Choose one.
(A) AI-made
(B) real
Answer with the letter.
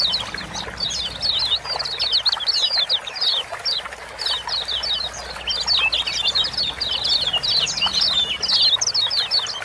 B